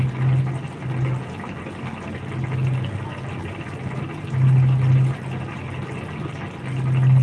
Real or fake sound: real